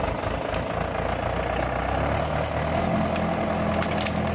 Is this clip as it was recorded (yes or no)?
yes